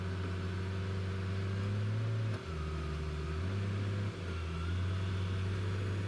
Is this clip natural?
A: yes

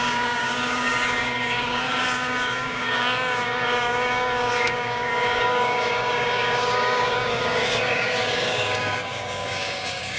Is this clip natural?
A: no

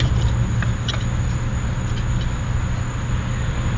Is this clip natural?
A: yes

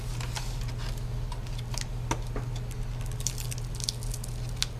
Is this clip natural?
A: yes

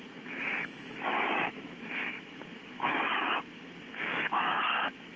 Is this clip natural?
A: no